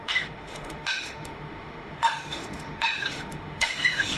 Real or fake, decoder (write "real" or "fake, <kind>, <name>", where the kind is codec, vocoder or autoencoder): fake, autoencoder, DAC-VAE